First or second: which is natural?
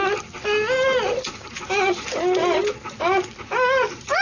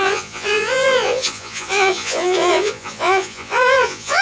first